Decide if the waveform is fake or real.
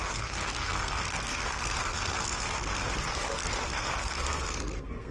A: fake